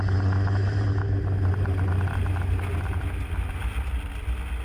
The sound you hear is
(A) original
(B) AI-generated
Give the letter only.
A